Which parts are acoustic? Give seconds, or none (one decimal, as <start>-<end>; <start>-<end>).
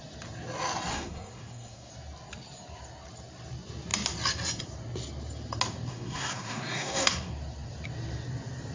0.0-0.9; 1.9-5.9; 7.3-8.7